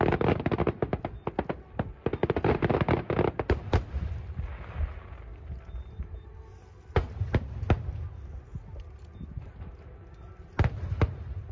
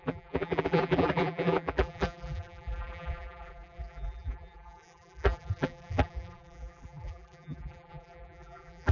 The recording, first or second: first